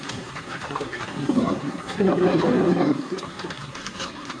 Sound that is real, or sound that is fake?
fake